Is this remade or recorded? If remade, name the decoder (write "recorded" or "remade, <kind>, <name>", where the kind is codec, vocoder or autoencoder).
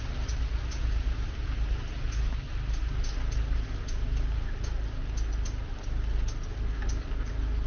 recorded